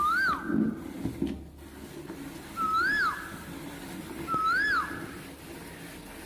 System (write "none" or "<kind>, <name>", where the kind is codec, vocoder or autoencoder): none